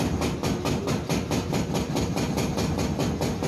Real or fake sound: real